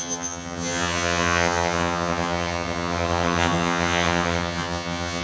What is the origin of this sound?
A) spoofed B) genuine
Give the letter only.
A